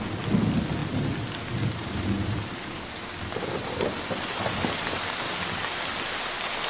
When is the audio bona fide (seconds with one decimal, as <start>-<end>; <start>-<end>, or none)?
0.0-6.7